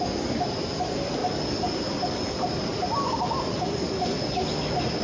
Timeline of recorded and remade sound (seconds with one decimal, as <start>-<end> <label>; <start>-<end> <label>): 0.0-5.0 recorded

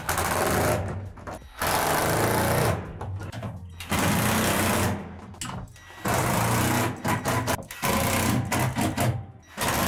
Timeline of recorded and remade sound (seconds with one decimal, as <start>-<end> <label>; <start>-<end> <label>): 0.0-9.9 recorded